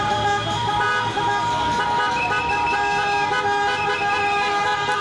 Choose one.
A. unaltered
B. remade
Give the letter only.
A